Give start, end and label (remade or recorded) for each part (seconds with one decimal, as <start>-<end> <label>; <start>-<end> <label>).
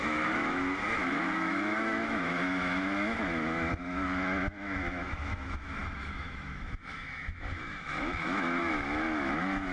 0.0-9.7 remade